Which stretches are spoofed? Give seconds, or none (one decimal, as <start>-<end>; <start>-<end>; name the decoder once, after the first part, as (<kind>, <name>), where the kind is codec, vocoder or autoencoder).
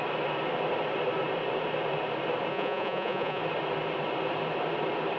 2.5-3.4 (vocoder, Vocos)